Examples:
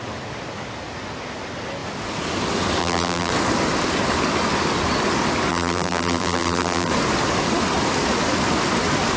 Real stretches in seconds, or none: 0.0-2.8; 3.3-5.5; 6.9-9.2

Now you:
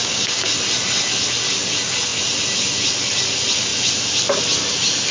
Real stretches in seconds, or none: 0.5-5.1

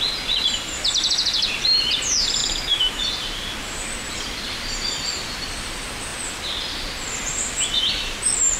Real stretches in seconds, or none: 0.0-2.4; 3.0-8.6